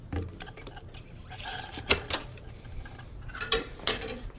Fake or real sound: fake